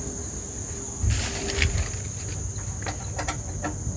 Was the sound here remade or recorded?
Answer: recorded